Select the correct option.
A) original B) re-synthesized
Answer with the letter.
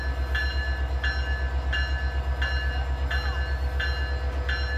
A